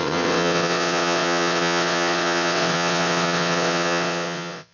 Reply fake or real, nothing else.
fake